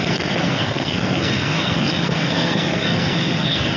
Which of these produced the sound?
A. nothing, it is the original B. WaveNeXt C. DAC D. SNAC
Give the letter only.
D